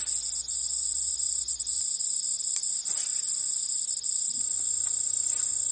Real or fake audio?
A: real